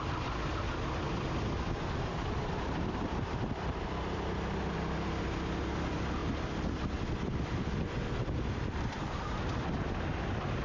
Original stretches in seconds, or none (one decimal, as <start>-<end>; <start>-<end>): 0.0-10.6